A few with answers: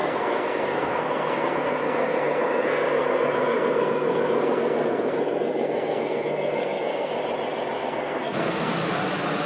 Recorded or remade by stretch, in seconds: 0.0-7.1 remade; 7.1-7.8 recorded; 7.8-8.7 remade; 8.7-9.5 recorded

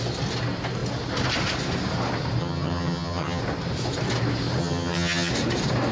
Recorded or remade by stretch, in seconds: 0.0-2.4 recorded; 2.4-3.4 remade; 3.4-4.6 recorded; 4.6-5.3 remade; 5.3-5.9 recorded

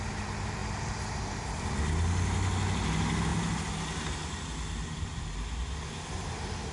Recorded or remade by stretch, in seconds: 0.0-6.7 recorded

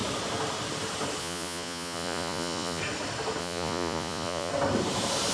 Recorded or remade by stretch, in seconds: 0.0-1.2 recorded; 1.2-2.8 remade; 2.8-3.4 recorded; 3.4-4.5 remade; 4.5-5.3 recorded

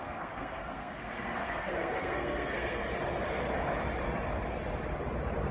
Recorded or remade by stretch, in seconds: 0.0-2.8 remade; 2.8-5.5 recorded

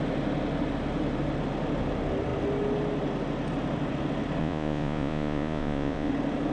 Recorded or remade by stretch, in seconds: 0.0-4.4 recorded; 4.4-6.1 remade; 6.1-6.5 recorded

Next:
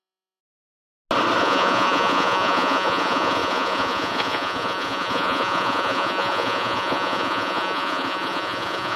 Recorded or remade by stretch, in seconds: 0.0-0.4 remade; 0.4-1.4 recorded; 1.4-9.0 remade

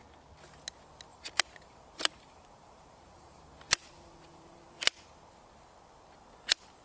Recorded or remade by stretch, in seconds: 0.0-1.1 recorded; 1.1-5.1 remade; 5.1-6.8 recorded